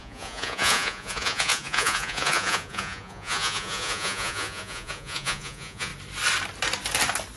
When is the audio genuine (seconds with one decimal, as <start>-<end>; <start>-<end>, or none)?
5.9-7.4